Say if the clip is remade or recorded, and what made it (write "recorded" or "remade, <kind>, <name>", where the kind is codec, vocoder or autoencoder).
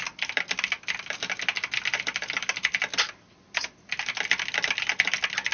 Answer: recorded